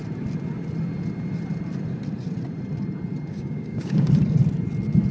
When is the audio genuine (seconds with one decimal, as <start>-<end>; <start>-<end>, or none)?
0.0-3.3; 4.1-5.1